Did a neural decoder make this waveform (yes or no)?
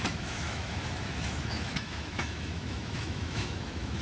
yes